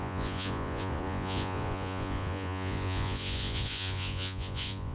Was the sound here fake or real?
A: fake